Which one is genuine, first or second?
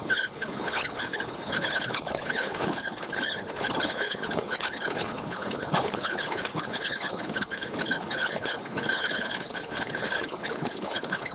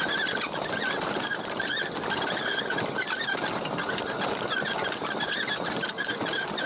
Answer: second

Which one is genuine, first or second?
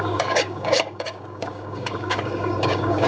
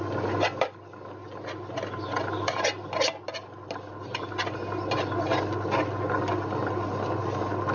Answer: second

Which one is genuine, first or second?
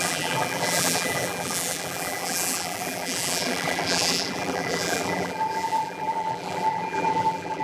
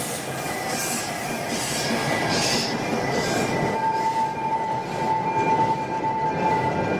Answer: second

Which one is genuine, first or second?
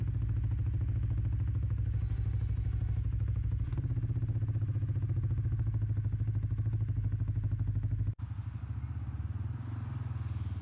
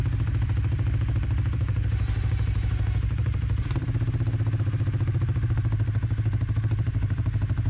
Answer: first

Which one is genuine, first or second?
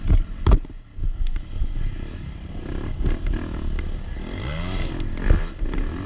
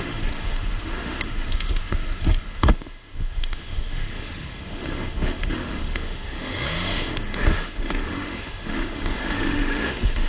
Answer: first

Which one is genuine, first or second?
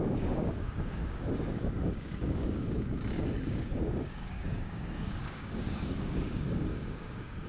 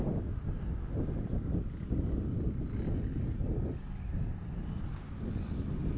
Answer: second